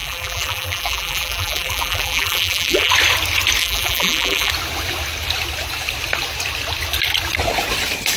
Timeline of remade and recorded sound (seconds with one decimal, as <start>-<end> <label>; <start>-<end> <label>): 0.0-2.9 remade; 2.9-3.6 recorded; 3.6-4.5 remade; 4.5-8.2 recorded